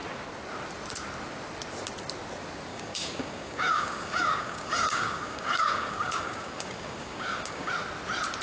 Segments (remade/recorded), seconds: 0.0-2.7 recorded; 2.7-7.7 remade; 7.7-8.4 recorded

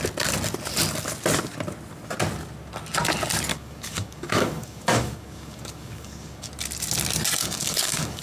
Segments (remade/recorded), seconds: 0.0-3.5 recorded; 3.5-6.5 remade; 6.5-7.4 recorded; 7.4-8.2 remade